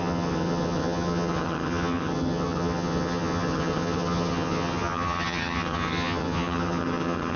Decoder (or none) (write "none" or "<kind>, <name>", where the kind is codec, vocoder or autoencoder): vocoder, HiFi-GAN